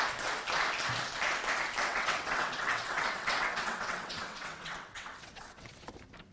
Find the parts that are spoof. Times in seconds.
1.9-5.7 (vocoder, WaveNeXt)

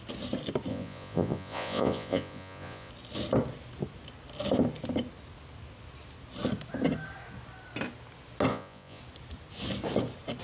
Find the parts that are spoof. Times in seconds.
0.7-2.9 (vocoder, Vocos); 8.5-9.0

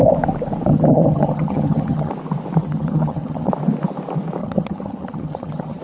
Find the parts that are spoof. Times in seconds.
0.7-2.1 (vocoder, HiFi-GAN); 2.6-3.5; 4.4-5.8

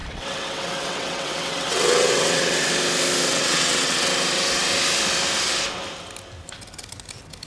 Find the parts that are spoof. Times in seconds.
0.0-2.7 (vocoder, WaveNeXt); 3.3-4.1